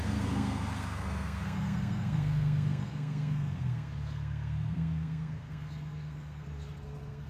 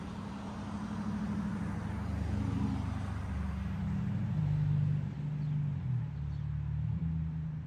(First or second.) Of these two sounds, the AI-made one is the first